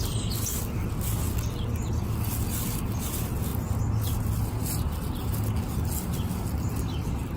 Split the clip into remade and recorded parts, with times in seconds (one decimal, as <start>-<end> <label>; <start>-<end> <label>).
0.0-7.4 recorded